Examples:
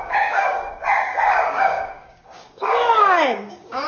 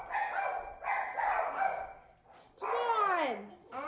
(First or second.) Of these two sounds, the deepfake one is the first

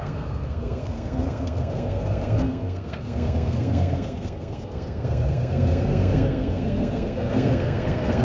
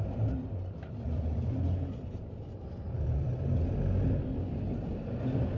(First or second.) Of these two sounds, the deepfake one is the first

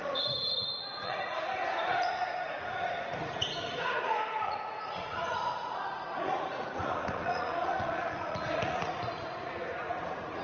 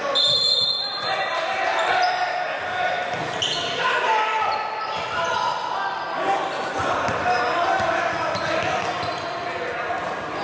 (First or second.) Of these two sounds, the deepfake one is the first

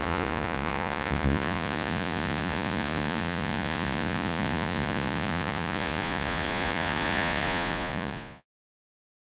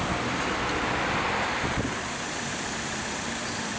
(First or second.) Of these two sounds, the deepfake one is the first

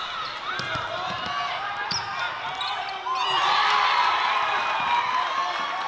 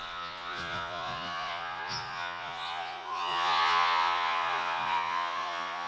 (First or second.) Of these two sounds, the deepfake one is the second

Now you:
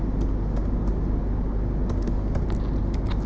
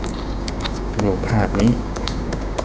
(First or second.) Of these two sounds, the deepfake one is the second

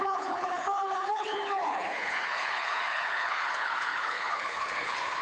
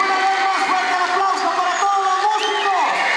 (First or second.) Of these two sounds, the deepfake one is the first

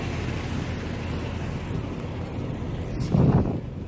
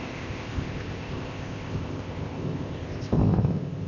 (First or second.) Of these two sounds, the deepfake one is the second